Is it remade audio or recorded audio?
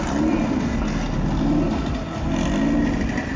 recorded